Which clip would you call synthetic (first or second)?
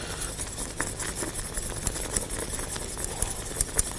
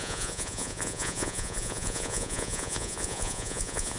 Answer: second